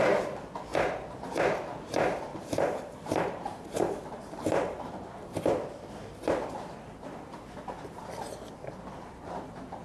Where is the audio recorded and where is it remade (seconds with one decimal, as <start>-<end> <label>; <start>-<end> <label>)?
0.0-2.3 recorded; 2.3-5.4 remade; 5.4-9.8 recorded